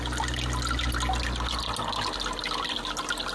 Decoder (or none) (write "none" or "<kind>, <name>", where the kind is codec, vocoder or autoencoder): none